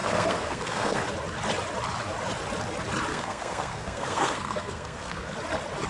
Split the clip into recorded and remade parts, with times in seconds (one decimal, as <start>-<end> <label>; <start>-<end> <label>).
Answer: 0.0-1.0 remade; 1.0-3.1 recorded; 3.1-5.3 remade; 5.3-5.9 recorded